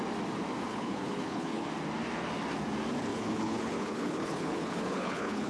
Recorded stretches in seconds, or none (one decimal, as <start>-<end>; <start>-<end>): 0.0-0.7; 1.7-3.1